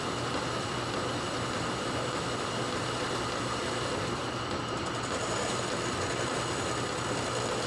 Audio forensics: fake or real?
real